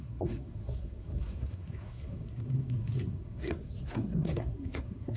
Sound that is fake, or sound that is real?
fake